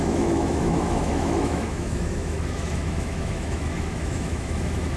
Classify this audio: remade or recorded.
remade